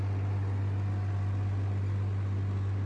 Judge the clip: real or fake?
real